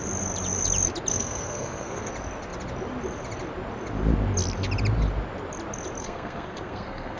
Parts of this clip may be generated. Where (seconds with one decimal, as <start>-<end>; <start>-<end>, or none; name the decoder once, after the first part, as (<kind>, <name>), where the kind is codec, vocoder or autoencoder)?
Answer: 1.1-2.1 (codec, SNAC); 6.0-7.2